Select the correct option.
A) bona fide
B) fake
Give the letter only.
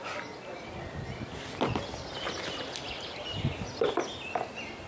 A